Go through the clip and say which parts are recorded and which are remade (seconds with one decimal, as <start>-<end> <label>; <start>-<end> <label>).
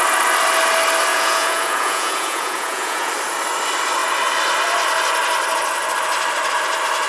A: 0.0-1.1 recorded; 1.1-3.1 remade; 3.1-7.1 recorded